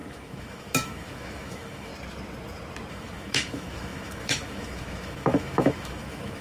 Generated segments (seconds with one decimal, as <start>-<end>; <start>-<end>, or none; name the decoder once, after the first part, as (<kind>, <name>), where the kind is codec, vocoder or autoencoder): 0.0-1.9 (autoencoder, DAC-VAE); 2.9-6.4